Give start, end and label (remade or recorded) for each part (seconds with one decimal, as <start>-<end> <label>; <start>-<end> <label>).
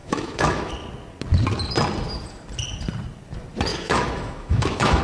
0.0-0.7 remade; 0.7-3.7 recorded; 3.7-5.0 remade